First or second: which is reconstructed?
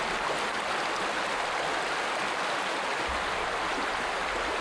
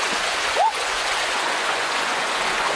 second